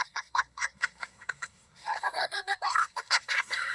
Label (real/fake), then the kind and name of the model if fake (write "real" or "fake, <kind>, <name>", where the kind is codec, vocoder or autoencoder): fake, codec, SNAC